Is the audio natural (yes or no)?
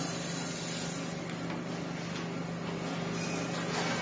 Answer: yes